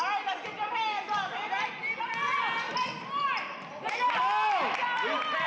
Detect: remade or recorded recorded